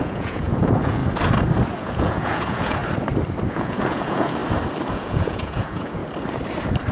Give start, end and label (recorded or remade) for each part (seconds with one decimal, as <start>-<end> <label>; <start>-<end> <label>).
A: 0.0-1.0 remade; 1.0-1.8 recorded; 1.8-2.8 remade; 2.8-3.5 recorded; 3.5-4.4 remade; 4.4-4.9 recorded; 4.9-6.0 remade; 6.0-6.9 recorded